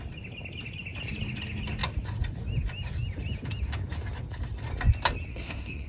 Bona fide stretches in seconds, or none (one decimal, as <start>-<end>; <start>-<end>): 0.0-5.3